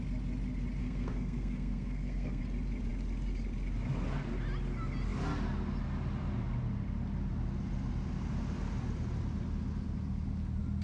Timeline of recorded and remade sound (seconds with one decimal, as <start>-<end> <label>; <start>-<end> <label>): 0.0-0.8 recorded; 0.8-2.4 remade; 2.4-10.8 recorded